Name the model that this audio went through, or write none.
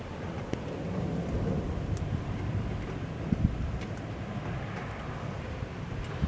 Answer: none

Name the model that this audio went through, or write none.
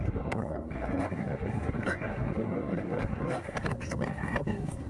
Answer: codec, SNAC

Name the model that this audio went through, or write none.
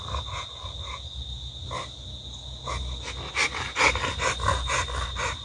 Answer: none